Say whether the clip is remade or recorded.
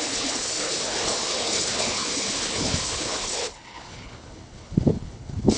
remade